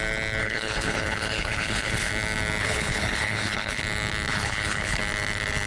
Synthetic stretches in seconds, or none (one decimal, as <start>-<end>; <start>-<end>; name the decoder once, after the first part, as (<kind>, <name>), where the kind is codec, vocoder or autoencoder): 0.4-2.1 (codec, HILCodec); 2.6-3.8; 4.3-5.0